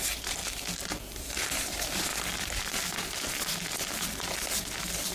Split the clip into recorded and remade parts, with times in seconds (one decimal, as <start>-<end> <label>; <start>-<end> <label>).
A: 0.0-0.4 remade; 0.4-1.0 recorded; 1.0-2.1 remade; 2.1-5.1 recorded